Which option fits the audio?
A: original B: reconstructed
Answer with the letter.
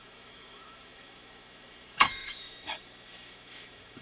B